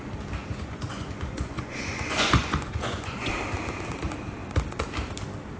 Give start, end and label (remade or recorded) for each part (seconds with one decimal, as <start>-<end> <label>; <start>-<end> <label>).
0.0-0.4 recorded; 0.4-3.3 remade; 3.3-5.6 recorded